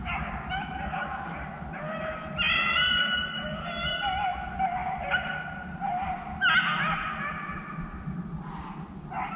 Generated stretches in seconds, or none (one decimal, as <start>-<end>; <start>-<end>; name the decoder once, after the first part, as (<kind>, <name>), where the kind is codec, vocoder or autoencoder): none